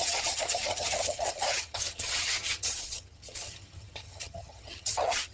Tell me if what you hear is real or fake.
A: fake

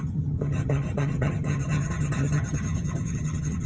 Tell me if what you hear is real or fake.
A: fake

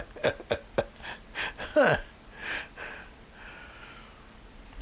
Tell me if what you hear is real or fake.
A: real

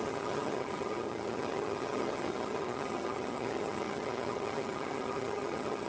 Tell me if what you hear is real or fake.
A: fake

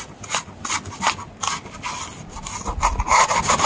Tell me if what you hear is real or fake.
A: real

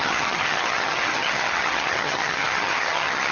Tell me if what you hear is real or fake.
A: fake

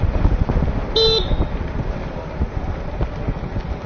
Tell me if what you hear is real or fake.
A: real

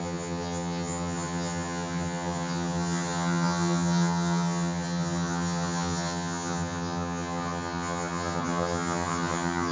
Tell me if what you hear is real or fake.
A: fake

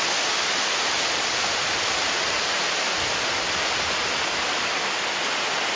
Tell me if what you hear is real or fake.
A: real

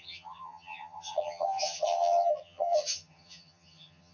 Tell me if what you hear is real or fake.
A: fake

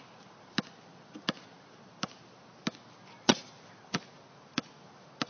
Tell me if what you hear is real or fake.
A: real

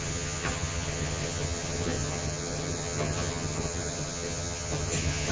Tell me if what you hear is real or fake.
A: fake